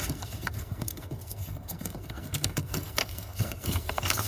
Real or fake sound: fake